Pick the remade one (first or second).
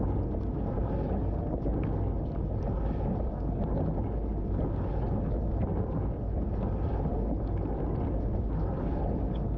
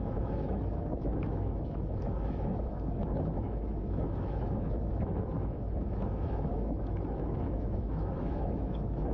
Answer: second